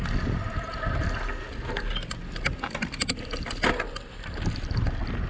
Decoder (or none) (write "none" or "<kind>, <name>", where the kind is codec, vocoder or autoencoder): none